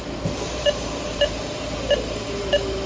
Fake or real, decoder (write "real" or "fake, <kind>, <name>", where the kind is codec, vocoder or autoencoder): fake, vocoder, BigVGAN v2